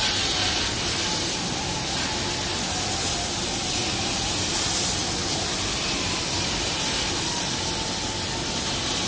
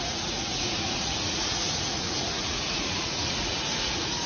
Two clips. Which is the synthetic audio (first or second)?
second